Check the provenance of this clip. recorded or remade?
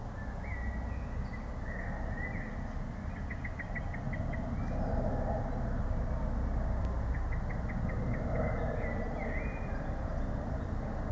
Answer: recorded